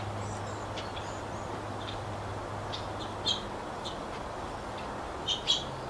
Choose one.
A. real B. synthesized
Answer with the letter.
B